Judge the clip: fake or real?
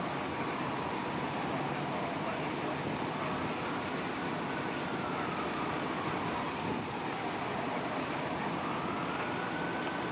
real